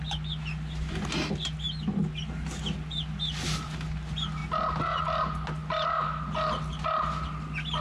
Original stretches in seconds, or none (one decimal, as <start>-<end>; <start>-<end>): 0.0-7.8